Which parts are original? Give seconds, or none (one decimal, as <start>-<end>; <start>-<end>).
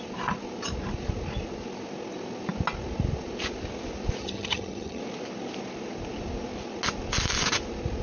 0.0-4.2; 5.0-8.0